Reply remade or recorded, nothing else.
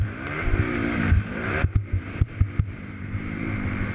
remade